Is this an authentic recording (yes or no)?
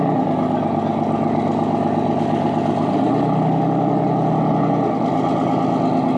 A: yes